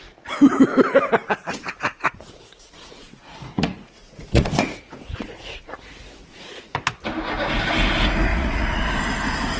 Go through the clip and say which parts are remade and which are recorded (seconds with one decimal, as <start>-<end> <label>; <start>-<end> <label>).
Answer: 0.0-1.9 recorded; 1.9-6.8 remade; 6.8-8.3 recorded; 8.3-9.0 remade; 9.0-9.6 recorded